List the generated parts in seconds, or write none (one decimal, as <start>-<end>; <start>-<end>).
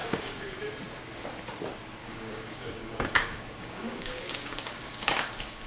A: 0.0-0.6; 2.0-5.7